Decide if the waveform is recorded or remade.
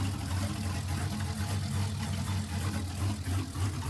recorded